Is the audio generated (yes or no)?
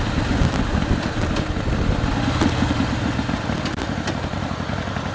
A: no